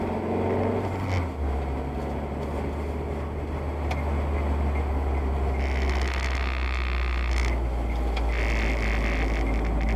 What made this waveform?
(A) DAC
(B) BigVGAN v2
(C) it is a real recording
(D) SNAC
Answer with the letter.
C